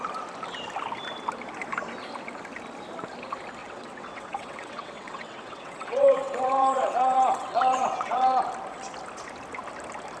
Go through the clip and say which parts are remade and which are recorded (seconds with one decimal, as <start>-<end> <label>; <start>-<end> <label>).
0.0-3.6 recorded; 3.6-8.4 remade; 8.4-10.2 recorded